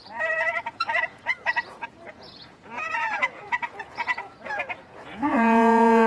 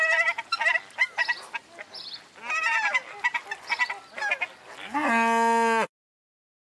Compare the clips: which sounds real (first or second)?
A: second